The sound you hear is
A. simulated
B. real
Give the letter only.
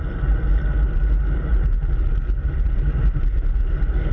B